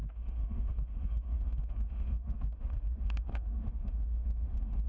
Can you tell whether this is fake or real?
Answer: fake